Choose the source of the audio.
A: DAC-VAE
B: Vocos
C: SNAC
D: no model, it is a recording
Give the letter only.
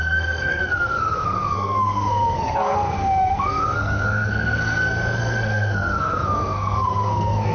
C